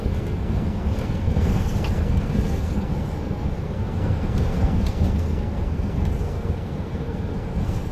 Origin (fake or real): fake